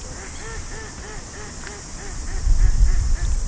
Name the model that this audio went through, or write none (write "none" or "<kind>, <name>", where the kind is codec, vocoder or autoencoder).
none